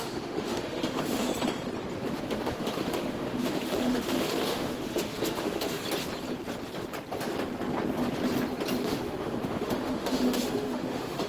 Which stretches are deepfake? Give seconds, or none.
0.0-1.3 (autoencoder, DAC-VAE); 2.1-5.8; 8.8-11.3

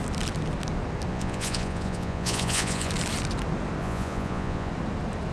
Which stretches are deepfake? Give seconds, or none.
1.1-2.9 (vocoder, Vocos); 3.8-4.7

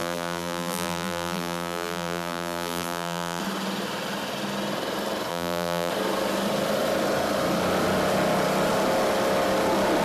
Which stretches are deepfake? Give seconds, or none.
0.0-3.4 (vocoder, BigVGAN v2); 5.3-5.9

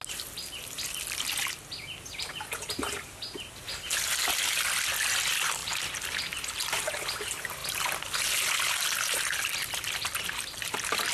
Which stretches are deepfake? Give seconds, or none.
5.6-6.6 (vocoder, BigVGAN v2)